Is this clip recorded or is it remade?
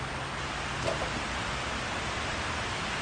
recorded